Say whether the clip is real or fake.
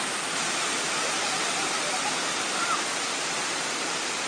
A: real